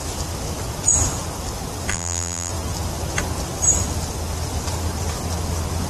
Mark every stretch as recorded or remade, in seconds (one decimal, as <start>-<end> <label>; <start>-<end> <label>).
0.0-1.9 recorded; 1.9-2.5 remade; 2.5-5.9 recorded